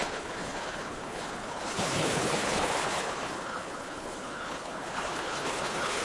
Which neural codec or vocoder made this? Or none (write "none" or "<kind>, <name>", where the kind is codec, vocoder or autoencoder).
codec, HILCodec